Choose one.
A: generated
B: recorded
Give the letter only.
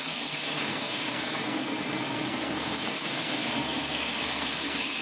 A